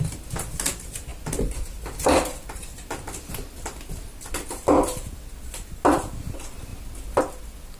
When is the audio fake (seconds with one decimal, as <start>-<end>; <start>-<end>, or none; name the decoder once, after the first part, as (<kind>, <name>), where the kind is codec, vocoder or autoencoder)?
none